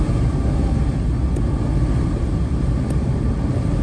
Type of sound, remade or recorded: recorded